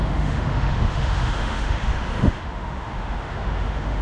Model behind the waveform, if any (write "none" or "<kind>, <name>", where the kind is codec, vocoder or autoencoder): autoencoder, DAC-VAE